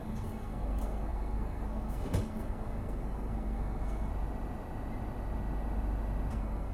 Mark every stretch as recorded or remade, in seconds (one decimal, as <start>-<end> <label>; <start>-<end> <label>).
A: 0.0-4.1 remade; 4.1-6.3 recorded; 6.3-6.7 remade